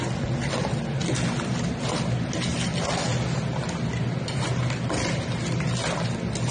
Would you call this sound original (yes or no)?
yes